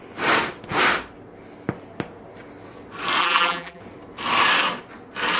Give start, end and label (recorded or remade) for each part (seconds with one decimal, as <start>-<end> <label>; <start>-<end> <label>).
0.0-3.2 recorded; 3.2-3.8 remade; 3.8-5.4 recorded